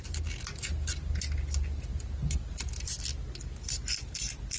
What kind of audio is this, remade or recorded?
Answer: recorded